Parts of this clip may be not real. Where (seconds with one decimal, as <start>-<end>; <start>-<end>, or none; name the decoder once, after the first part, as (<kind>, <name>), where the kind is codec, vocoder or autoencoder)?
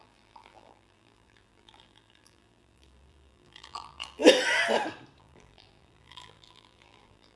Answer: 0.0-4.2 (vocoder, BigVGAN v2); 5.2-7.4